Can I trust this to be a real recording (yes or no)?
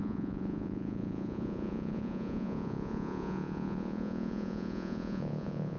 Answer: no